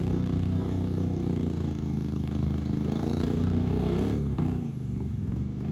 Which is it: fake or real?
fake